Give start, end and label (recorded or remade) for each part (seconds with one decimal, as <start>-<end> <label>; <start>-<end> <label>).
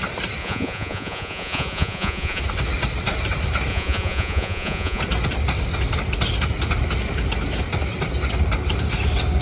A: 0.0-0.4 recorded; 0.4-2.4 remade; 2.4-3.7 recorded; 3.7-5.0 remade; 5.0-9.4 recorded